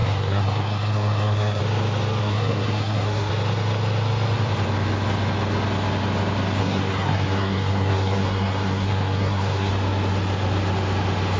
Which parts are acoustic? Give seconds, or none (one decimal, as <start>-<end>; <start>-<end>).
1.6-2.2; 3.3-6.6; 9.7-11.4